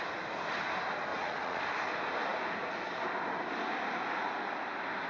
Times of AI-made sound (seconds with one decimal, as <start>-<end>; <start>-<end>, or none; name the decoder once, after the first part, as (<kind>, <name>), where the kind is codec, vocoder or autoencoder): 1.1-1.6 (vocoder, Vocos)